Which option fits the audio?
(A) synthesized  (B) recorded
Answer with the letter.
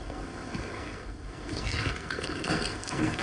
A